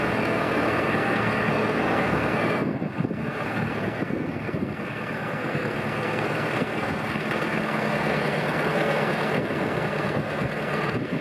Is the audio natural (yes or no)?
no